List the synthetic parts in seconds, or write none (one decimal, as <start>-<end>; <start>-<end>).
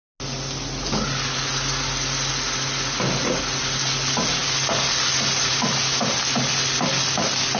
none